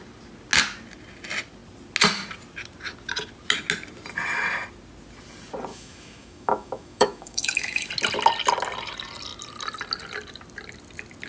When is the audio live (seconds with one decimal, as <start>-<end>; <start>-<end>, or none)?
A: 0.0-5.7; 7.9-11.3

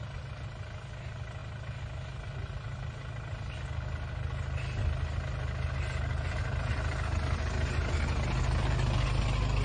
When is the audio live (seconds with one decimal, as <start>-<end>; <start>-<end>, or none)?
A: 0.0-9.6

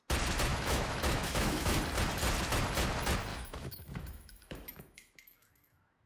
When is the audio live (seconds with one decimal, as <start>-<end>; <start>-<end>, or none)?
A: 0.0-0.5; 1.8-3.3

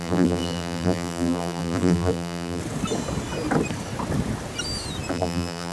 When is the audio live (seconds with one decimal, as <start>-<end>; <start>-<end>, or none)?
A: 2.6-5.1